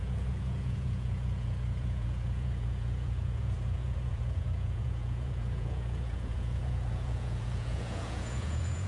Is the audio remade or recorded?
remade